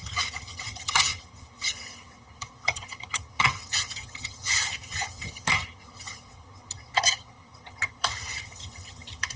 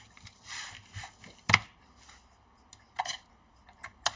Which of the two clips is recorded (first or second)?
second